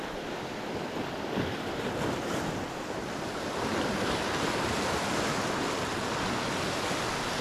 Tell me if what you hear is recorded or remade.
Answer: recorded